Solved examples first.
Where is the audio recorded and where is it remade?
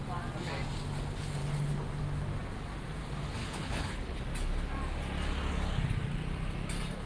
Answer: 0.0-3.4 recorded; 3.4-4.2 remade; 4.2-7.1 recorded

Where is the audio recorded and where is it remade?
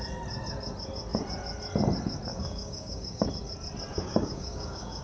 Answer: 0.0-2.3 recorded; 2.3-3.3 remade; 3.3-3.9 recorded; 3.9-5.0 remade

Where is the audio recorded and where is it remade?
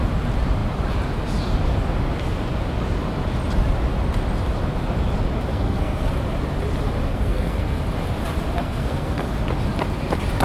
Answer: 0.0-5.5 recorded; 5.5-6.1 remade; 6.1-7.1 recorded; 7.1-7.8 remade; 7.8-8.6 recorded; 8.6-9.3 remade; 9.3-10.4 recorded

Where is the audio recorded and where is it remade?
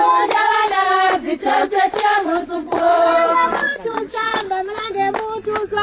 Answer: 0.0-1.4 recorded; 1.4-4.9 remade; 4.9-5.8 recorded